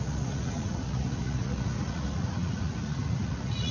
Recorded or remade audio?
remade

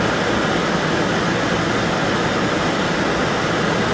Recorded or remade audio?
recorded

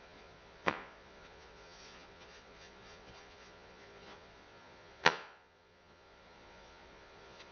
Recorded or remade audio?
remade